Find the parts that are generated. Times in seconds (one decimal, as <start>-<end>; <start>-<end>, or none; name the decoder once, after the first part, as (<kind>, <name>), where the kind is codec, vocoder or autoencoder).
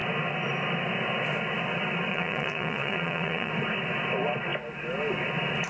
2.1-3.5 (vocoder, Vocos)